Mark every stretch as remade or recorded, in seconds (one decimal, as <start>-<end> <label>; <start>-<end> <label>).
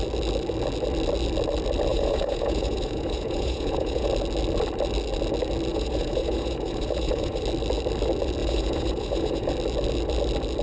0.0-1.9 recorded; 1.9-4.1 remade; 4.1-5.7 recorded; 5.7-7.4 remade; 7.4-8.4 recorded; 8.4-9.5 remade; 9.5-10.6 recorded